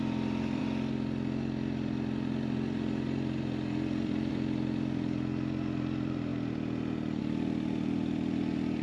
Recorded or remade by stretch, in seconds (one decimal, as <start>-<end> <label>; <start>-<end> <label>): 0.0-0.6 remade; 0.6-4.3 recorded; 4.3-6.3 remade; 6.3-7.2 recorded; 7.2-8.8 remade